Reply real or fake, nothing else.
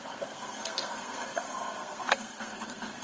fake